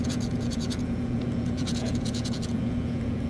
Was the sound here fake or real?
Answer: fake